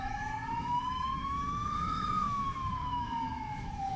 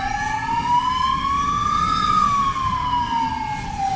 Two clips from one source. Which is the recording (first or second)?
second